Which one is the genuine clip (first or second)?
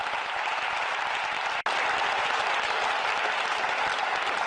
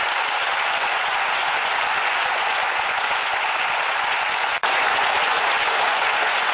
first